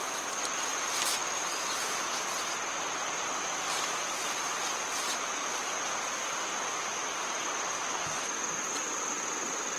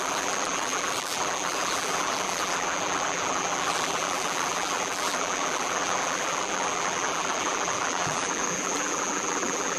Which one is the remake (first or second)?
second